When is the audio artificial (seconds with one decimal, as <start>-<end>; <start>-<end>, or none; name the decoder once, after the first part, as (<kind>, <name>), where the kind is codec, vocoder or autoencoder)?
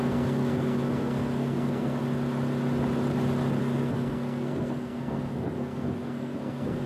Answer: 0.0-2.0 (codec, SNAC); 3.6-6.9